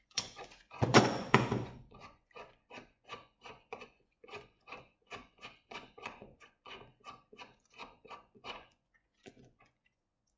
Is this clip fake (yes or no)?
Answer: yes